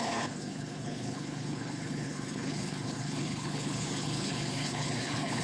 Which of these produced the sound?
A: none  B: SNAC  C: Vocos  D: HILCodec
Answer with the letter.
D